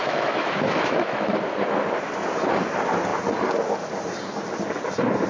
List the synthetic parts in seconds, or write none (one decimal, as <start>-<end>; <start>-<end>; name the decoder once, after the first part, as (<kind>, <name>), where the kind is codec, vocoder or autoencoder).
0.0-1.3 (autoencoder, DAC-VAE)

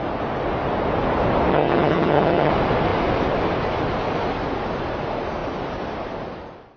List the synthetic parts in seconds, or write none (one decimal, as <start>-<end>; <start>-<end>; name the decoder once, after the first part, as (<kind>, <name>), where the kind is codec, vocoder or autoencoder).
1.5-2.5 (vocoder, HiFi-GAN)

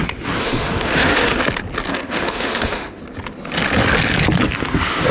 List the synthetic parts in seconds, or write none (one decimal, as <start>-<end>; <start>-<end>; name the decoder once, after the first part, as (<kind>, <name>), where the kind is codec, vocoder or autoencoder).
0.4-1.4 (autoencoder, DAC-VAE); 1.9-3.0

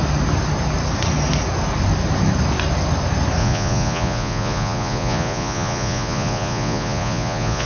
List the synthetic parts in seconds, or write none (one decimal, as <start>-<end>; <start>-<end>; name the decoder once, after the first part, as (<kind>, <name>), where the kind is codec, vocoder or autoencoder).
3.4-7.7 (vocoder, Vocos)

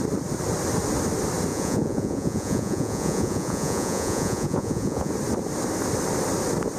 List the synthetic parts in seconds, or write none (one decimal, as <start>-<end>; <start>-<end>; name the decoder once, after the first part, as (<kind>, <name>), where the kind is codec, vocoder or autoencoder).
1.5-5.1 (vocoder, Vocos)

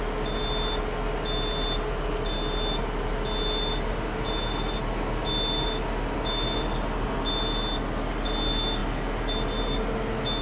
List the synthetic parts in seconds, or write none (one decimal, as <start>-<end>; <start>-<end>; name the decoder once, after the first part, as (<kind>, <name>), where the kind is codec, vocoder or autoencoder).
none

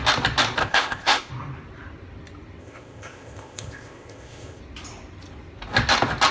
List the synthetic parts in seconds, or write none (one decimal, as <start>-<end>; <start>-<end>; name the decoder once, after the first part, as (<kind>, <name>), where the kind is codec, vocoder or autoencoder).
0.6-1.3 (codec, ZipCodec); 2.6-4.6

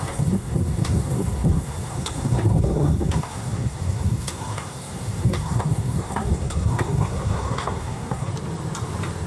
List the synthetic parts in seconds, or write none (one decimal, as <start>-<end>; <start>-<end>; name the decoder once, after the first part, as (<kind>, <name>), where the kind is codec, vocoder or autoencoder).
0.0-8.3 (codec, SNAC)